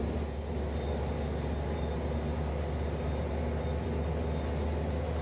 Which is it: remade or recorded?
recorded